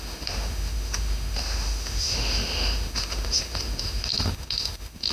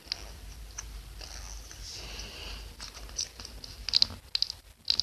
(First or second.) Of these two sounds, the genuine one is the second